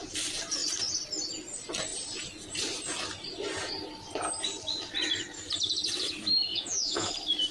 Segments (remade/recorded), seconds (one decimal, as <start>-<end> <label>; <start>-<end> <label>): 0.0-6.5 recorded; 6.5-7.1 remade; 7.1-7.5 recorded